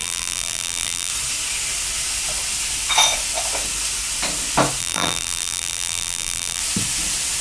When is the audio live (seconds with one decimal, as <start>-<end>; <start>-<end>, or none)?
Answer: 1.1-4.8; 6.6-7.4